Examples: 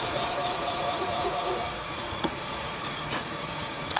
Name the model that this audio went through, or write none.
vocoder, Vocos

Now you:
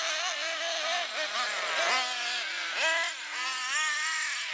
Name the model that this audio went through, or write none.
none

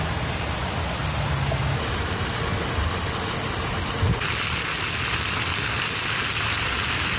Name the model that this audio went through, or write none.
none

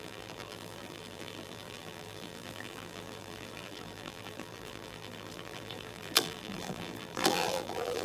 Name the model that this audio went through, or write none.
vocoder, BigVGAN v2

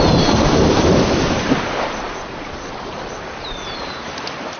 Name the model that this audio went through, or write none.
vocoder, BigVGAN v2